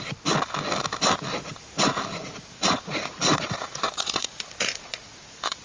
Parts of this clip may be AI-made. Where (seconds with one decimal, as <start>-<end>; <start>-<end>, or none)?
2.2-5.6